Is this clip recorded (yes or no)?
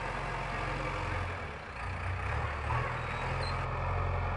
yes